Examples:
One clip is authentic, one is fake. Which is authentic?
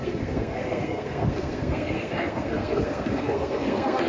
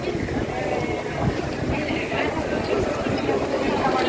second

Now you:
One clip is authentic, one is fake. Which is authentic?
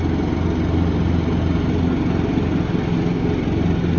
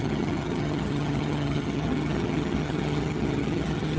first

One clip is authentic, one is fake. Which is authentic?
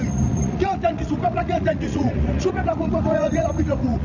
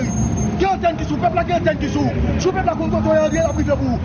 second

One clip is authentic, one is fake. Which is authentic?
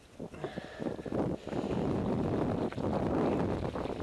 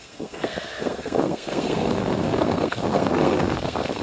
first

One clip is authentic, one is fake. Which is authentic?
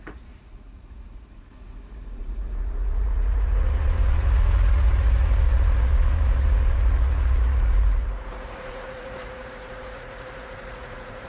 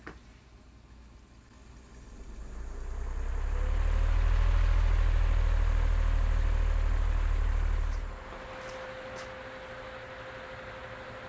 second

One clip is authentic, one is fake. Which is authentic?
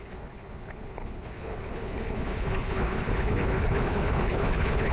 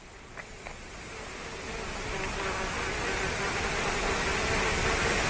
second